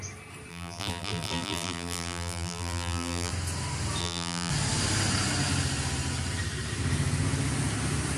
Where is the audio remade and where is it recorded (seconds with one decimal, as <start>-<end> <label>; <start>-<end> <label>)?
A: 0.0-0.5 recorded; 0.5-3.3 remade; 3.3-4.0 recorded; 4.0-4.5 remade; 4.5-8.2 recorded